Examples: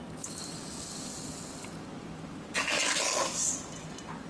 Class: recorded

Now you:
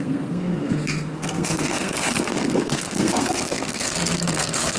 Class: remade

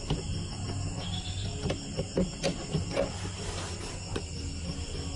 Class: recorded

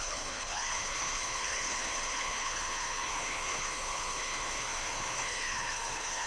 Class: remade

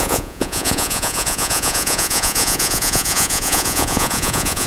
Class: remade